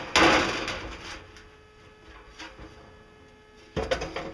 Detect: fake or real real